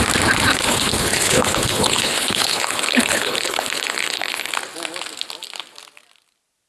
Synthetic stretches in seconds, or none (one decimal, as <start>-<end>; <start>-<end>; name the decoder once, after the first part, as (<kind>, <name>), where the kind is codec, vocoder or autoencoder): 0.5-4.5 (codec, HILCodec)